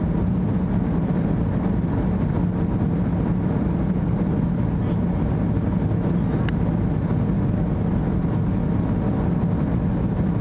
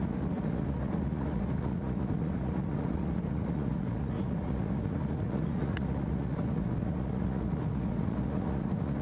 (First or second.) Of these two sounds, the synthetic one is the second